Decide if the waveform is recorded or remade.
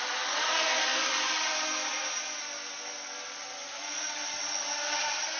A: recorded